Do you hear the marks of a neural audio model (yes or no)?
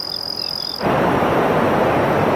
no